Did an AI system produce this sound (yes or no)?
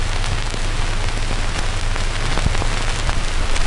no